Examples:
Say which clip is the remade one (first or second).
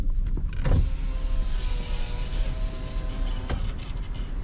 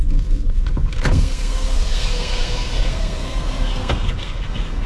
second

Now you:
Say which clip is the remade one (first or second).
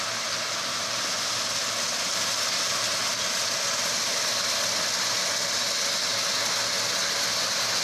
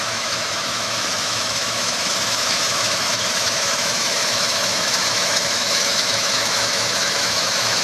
second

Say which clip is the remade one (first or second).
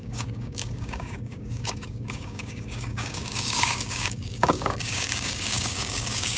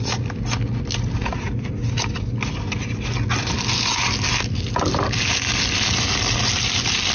first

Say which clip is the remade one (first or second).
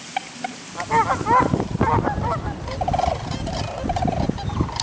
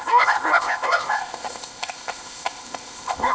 second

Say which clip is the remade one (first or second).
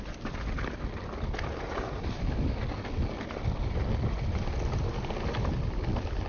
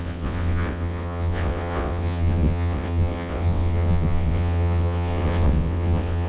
second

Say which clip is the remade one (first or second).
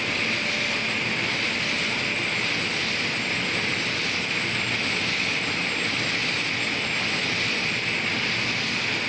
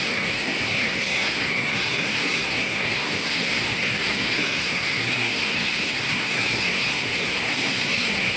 second